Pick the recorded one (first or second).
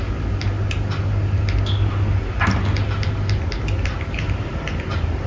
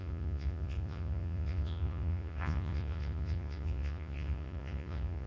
first